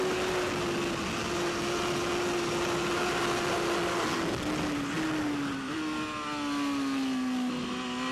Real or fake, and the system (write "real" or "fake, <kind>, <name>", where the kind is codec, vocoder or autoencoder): real